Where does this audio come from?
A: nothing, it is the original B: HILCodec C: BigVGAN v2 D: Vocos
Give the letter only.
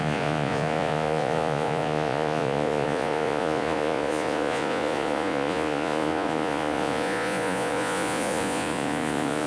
D